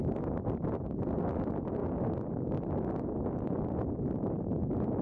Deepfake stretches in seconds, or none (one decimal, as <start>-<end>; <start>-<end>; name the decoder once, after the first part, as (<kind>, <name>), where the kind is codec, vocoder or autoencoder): none